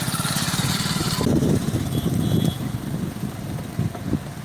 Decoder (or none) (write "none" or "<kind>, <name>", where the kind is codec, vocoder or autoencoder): none